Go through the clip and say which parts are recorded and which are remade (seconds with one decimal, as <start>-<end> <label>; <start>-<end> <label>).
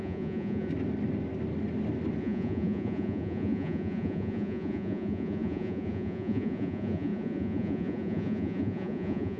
0.0-0.7 remade; 0.7-2.2 recorded; 2.2-9.4 remade